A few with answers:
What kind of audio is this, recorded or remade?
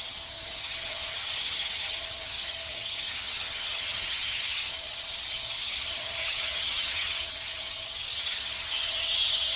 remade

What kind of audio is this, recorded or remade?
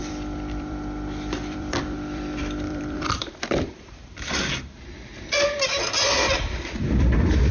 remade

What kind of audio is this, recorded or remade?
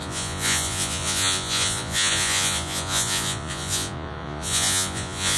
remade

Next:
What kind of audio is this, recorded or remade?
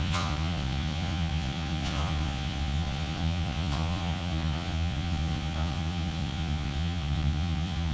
remade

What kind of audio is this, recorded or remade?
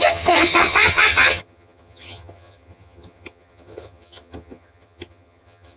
remade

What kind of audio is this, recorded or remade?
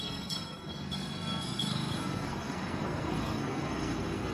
remade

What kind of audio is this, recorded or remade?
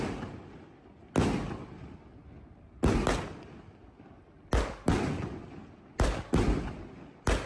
recorded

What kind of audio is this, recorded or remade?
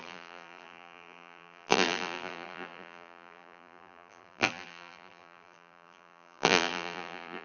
remade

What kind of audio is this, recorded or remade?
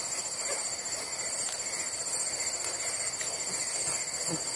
recorded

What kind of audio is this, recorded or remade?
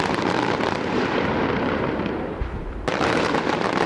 remade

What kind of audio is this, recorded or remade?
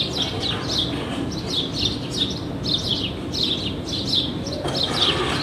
recorded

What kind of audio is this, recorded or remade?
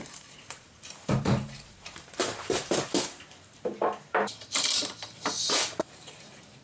remade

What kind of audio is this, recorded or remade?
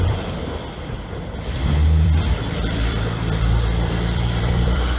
remade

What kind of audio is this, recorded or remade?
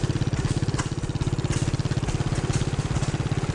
recorded